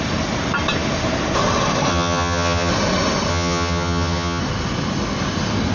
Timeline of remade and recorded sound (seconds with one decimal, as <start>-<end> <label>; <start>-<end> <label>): 0.0-1.9 recorded; 1.9-2.7 remade; 2.7-3.3 recorded; 3.3-4.4 remade; 4.4-5.7 recorded